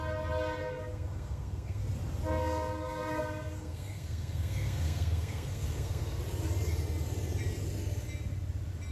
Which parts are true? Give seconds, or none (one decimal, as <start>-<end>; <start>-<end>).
0.0-0.6; 1.8-2.3; 6.2-8.9